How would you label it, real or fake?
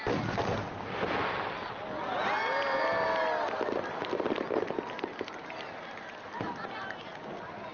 real